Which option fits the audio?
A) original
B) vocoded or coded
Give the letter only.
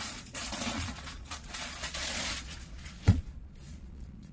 B